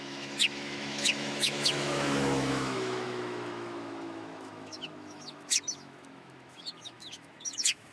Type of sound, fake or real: fake